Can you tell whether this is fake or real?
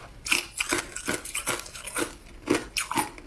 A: real